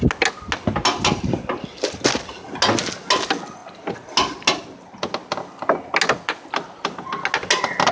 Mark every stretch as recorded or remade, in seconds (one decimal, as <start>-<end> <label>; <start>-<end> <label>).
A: 0.0-7.9 recorded